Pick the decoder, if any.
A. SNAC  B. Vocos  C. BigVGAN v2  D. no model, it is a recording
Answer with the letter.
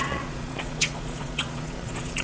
B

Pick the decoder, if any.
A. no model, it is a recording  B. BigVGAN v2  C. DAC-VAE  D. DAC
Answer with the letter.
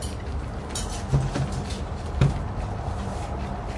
A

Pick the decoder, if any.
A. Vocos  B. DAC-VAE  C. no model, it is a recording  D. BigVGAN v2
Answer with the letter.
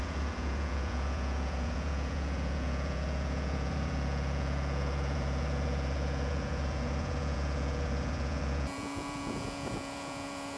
A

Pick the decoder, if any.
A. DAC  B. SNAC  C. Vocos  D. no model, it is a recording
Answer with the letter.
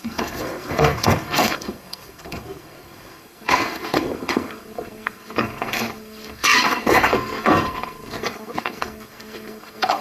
B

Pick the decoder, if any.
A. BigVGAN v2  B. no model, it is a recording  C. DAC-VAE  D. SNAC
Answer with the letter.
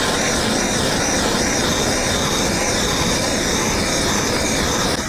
B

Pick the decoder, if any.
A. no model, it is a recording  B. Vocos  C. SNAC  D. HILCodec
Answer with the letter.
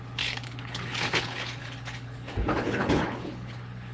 D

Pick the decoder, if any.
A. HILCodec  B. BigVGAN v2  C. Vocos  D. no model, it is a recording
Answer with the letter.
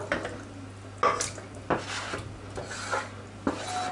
D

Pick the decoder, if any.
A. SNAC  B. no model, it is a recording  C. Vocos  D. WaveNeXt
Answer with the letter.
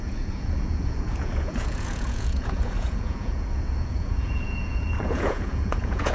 C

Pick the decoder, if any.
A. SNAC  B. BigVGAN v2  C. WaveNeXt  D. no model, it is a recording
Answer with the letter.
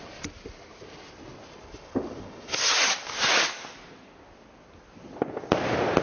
D